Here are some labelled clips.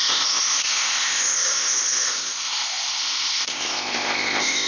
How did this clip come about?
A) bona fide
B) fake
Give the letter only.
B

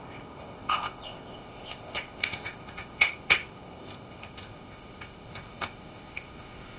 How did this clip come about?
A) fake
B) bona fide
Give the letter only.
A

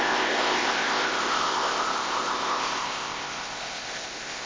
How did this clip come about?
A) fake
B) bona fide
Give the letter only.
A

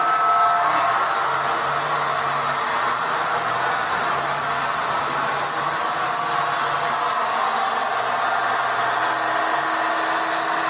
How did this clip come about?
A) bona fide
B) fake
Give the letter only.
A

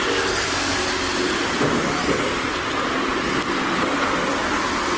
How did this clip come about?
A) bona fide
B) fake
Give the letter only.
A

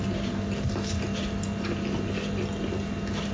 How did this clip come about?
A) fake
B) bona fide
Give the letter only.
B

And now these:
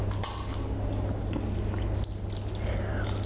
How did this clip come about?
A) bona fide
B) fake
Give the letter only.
A